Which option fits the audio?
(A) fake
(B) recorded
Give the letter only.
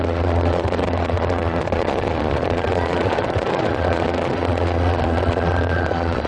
A